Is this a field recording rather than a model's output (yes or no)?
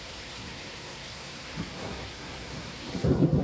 no